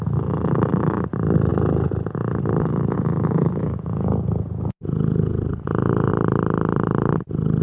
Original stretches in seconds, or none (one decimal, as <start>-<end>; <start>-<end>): 0.0-1.5; 6.1-7.6